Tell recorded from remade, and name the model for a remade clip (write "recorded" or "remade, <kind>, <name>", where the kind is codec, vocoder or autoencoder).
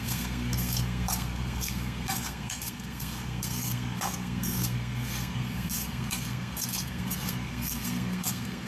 remade, codec, SNAC